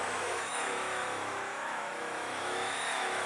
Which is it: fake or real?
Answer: fake